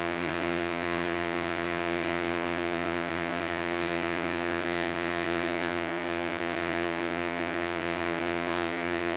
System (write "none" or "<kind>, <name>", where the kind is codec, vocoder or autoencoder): vocoder, HiFi-GAN